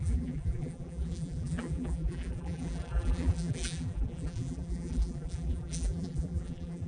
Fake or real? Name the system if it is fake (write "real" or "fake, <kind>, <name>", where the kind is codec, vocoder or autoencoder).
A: fake, vocoder, BigVGAN v2